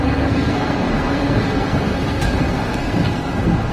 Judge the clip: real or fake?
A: fake